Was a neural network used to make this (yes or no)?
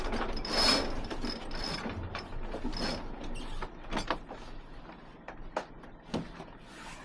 no